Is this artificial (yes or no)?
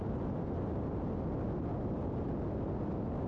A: no